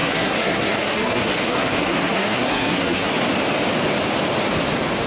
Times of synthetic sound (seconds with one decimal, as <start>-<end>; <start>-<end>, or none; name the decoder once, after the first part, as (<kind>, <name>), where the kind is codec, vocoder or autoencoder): 0.0-3.1 (codec, SNAC)